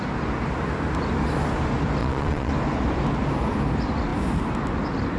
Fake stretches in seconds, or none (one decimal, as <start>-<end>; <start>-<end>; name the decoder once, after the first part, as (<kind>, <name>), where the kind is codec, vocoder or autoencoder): 2.0-2.5 (vocoder, Vocos)